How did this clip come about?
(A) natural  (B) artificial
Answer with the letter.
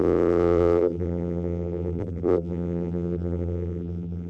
B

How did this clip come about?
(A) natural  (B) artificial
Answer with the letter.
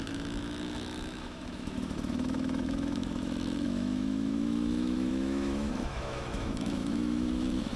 B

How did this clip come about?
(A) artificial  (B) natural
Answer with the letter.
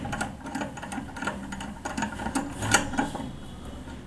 B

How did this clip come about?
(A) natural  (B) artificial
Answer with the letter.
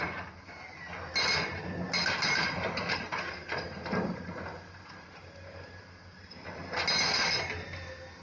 A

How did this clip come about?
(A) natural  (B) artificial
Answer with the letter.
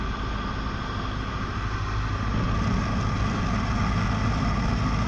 A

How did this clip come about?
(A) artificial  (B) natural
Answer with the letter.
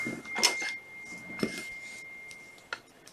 B